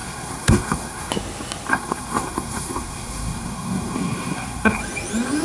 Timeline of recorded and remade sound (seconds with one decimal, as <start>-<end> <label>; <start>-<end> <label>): 0.0-1.1 remade; 1.1-1.7 recorded; 1.7-4.8 remade; 4.8-5.4 recorded